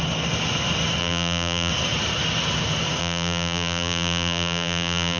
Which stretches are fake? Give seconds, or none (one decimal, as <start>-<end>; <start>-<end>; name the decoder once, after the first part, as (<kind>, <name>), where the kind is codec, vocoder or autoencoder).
1.0-1.7 (vocoder, BigVGAN v2); 3.0-5.2